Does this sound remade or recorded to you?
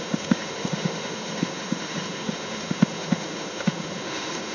remade